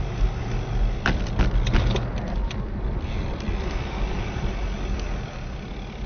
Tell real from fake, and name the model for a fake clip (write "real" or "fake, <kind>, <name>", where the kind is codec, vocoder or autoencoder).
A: real